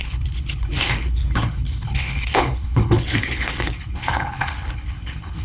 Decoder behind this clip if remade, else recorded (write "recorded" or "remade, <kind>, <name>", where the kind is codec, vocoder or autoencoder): remade, codec, HILCodec